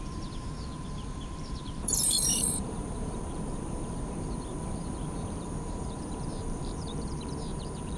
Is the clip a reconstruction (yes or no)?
yes